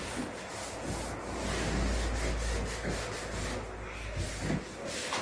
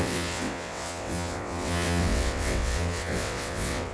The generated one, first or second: second